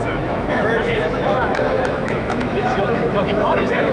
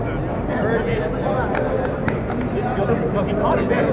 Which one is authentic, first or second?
second